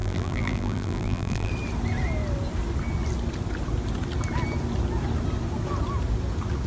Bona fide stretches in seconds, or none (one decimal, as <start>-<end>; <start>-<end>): 1.5-6.7